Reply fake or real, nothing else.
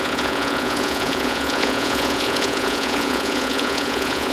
fake